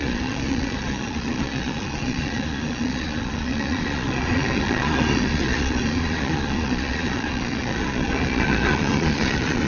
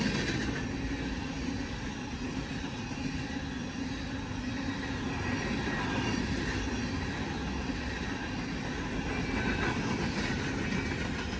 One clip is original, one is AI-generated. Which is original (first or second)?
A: second